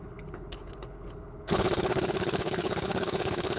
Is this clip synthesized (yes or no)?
yes